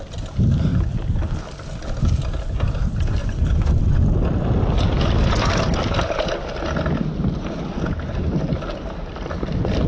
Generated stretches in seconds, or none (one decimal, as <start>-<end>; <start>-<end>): 3.2-4.0